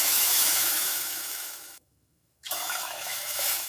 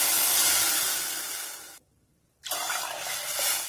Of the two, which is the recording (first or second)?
second